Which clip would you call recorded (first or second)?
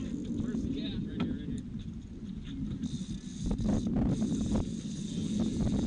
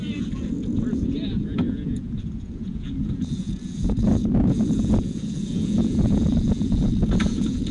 first